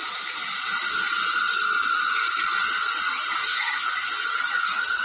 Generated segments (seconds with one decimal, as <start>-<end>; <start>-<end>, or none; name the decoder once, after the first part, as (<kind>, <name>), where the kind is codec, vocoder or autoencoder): 3.5-4.1 (autoencoder, DAC-VAE)